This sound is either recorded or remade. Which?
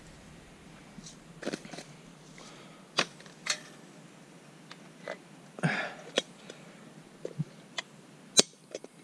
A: recorded